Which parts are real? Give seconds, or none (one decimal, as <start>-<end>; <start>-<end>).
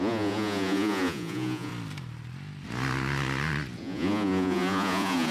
1.7-3.8